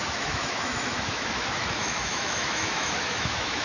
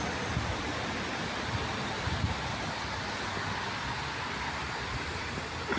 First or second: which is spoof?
first